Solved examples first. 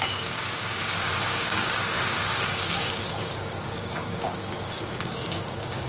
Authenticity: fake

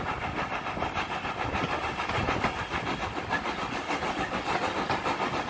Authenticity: real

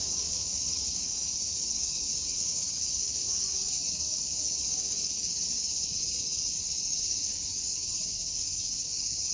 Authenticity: fake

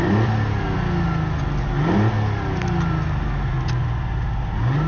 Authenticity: real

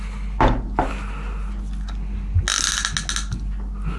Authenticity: real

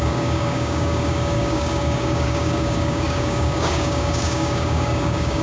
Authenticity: fake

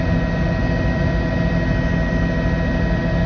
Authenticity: real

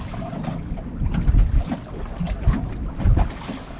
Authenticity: real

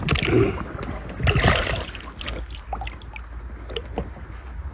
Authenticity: real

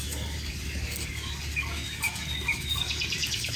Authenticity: fake